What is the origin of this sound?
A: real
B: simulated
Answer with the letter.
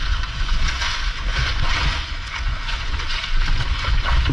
B